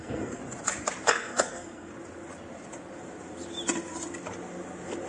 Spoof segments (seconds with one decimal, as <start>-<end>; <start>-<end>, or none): 0.0-0.4; 1.1-1.9